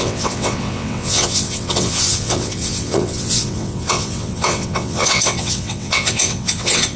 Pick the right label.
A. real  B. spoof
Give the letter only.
B